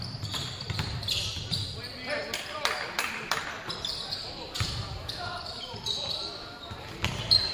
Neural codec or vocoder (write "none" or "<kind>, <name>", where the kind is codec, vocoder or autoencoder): vocoder, BigVGAN v2